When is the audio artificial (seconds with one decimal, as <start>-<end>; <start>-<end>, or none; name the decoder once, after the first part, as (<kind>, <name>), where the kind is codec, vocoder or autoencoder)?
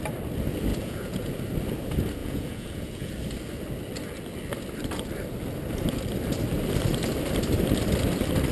0.7-1.3 (vocoder, Vocos); 2.2-3.1